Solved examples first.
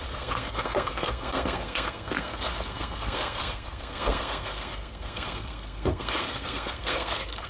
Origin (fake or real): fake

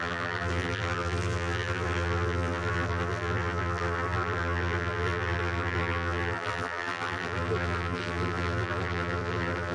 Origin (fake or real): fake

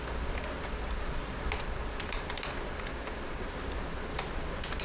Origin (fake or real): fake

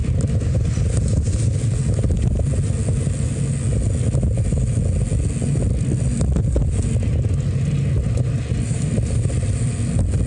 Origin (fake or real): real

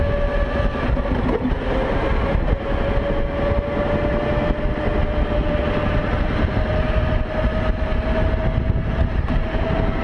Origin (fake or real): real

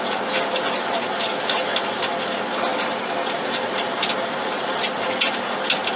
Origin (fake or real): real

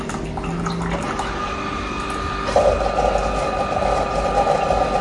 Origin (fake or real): real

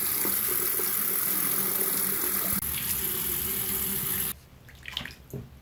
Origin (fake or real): real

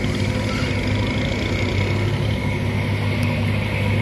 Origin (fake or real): real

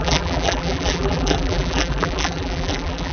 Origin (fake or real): fake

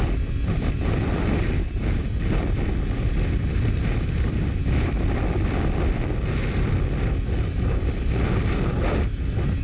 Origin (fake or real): real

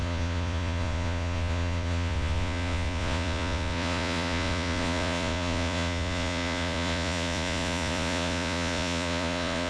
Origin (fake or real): fake